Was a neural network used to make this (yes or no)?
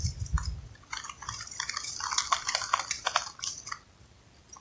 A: no